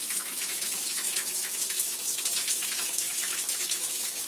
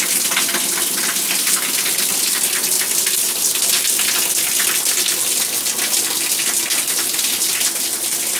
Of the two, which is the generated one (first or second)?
first